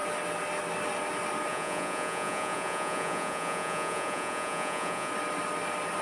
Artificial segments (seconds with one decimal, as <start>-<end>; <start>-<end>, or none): 1.5-5.1